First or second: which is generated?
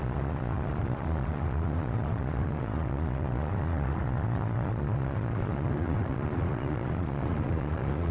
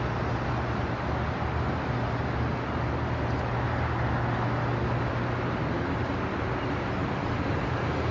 first